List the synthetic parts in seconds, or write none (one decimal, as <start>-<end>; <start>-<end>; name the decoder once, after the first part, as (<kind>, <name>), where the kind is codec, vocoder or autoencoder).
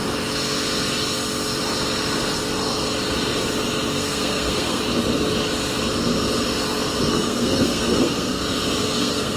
3.9-4.8 (codec, SNAC); 7.1-8.4; 8.8-9.4